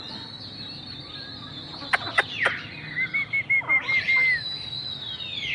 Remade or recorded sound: recorded